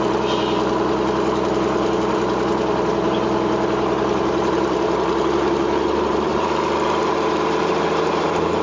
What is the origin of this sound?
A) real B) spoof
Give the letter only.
B